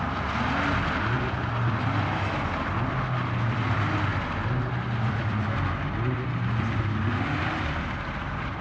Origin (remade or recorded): recorded